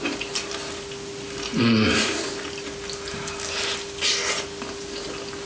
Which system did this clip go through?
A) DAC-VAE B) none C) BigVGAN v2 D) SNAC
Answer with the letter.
B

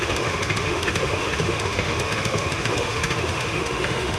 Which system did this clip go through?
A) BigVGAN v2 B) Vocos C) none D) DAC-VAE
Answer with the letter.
D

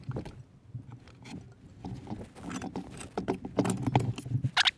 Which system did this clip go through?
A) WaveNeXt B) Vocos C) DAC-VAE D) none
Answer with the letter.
D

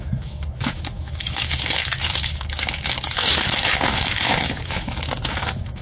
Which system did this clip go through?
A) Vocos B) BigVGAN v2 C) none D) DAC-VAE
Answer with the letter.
D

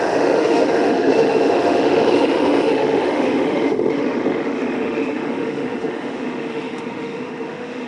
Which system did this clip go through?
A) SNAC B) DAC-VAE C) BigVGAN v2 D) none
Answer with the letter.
B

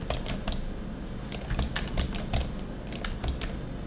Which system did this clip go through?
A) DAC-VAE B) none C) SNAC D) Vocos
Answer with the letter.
B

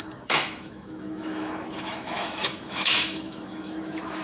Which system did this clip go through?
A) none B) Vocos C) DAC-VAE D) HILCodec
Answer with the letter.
C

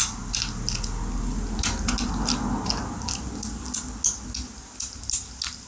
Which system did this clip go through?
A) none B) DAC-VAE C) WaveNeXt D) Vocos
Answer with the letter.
A